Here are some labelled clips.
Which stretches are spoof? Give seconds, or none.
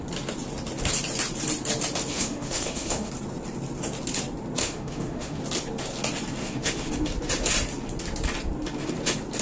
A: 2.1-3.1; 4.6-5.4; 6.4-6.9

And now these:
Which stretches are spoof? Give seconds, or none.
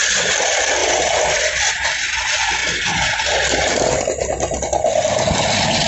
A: none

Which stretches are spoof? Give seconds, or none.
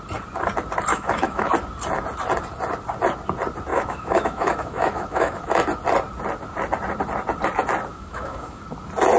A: 0.9-1.5; 3.7-5.5; 7.9-8.6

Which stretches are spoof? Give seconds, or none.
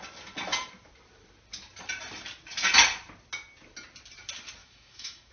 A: 4.6-5.3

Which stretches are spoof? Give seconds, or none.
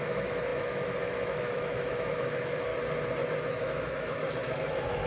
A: 0.0-2.7; 3.6-5.1